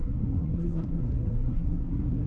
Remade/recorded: remade